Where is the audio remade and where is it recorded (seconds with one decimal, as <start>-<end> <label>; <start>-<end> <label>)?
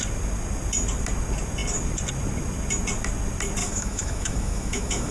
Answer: 0.0-3.6 recorded; 3.6-5.1 remade